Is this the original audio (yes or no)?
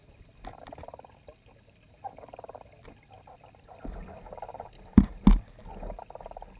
yes